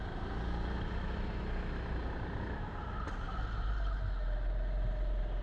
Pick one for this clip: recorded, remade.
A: recorded